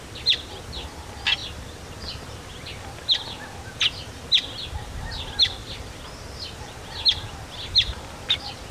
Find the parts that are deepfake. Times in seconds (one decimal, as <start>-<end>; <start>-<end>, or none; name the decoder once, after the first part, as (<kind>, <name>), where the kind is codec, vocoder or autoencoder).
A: none